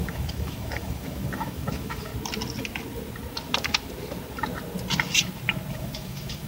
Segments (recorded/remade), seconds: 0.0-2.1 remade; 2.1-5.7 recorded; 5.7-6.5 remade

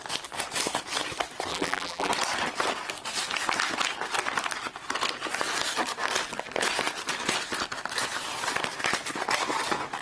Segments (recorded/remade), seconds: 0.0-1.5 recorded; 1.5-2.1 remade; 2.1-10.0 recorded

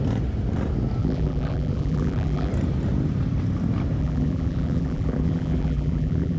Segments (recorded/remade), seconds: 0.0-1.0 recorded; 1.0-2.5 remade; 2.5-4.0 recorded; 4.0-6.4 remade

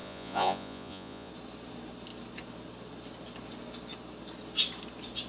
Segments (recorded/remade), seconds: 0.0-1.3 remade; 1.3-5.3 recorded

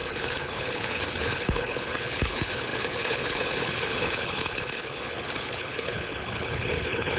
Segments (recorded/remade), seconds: 0.0-7.2 remade

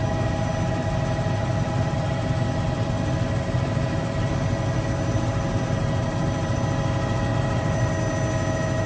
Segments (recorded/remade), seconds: 0.0-1.4 recorded; 1.4-6.6 remade; 6.6-7.3 recorded; 7.3-7.9 remade; 7.9-8.9 recorded

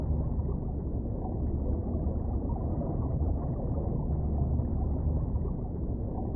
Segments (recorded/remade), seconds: 0.0-0.9 recorded; 0.9-1.4 remade; 1.4-1.8 recorded; 1.8-3.9 remade; 3.9-4.7 recorded; 4.7-6.0 remade; 6.0-6.4 recorded

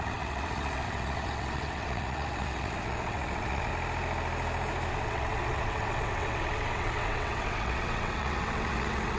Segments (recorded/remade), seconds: 0.0-3.7 remade; 3.7-4.9 recorded; 4.9-9.2 remade